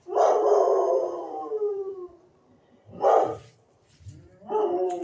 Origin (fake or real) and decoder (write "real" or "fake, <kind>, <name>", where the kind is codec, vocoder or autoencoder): fake, vocoder, BigVGAN v2